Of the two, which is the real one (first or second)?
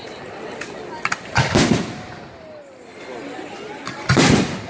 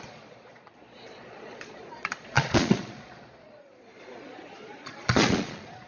first